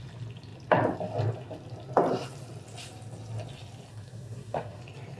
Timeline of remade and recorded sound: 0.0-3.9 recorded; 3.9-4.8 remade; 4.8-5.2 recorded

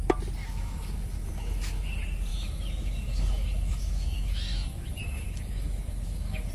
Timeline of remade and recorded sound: 0.0-0.4 recorded; 0.4-1.9 remade; 1.9-2.3 recorded; 2.3-6.5 remade